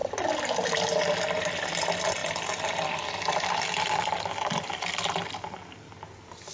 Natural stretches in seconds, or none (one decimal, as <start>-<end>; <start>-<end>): 0.0-6.5